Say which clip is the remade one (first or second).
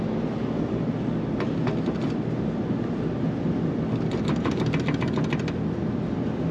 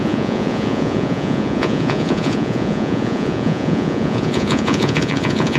second